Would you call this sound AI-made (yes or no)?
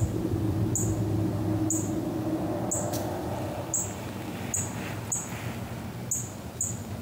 no